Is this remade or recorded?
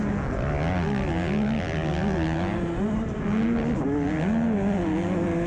recorded